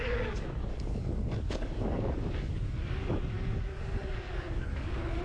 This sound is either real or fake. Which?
fake